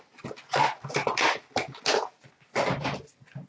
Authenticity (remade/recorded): recorded